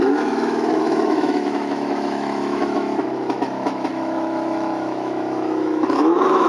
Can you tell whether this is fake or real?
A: fake